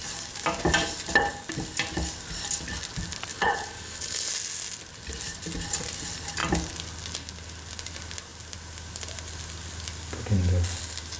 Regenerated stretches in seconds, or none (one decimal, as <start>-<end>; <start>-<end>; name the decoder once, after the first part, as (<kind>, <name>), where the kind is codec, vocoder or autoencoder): 3.3-4.3 (codec, HILCodec)